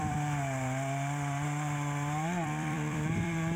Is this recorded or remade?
remade